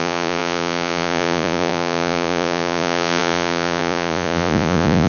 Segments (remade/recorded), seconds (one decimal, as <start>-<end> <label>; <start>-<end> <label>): 0.0-5.1 remade